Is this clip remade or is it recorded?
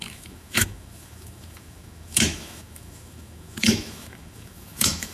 remade